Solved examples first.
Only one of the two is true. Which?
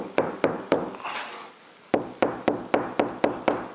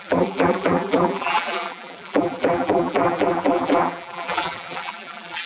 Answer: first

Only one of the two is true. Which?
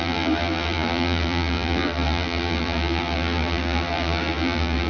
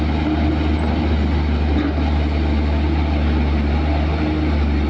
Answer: second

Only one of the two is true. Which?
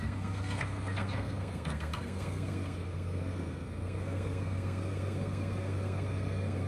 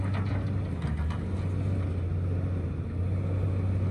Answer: second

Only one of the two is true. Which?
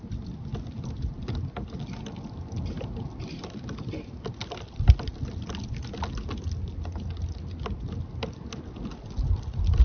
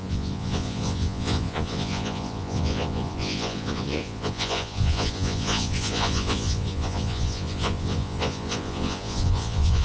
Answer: first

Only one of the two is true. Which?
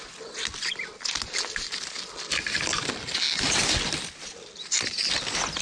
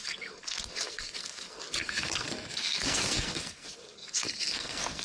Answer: first